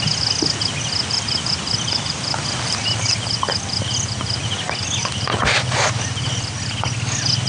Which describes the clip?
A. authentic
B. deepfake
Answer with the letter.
A